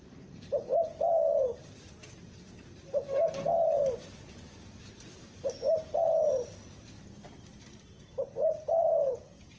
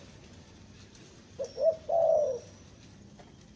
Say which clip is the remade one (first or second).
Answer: first